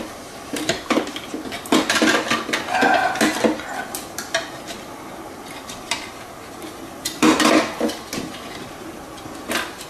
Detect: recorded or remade recorded